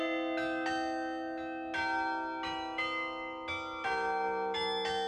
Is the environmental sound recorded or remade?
recorded